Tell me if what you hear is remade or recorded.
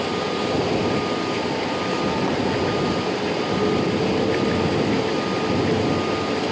recorded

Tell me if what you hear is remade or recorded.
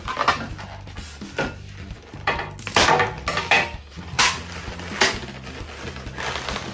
recorded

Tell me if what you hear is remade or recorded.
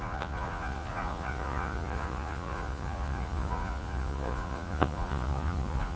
remade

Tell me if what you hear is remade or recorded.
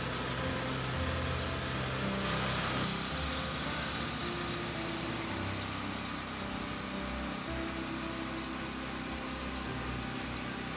recorded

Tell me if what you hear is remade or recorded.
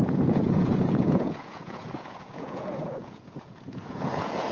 remade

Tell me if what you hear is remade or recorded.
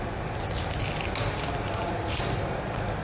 recorded